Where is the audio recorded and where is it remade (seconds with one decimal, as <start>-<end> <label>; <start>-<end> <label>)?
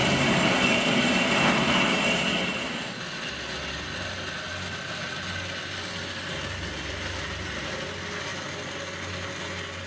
0.0-9.9 recorded